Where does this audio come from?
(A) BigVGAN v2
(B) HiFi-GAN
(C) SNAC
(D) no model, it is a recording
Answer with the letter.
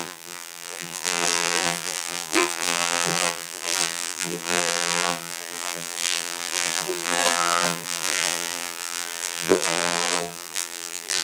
A